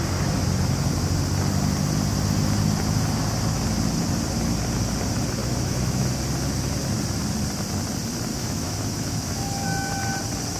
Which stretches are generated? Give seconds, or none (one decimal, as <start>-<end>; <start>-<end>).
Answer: 5.4-6.1; 8.3-9.9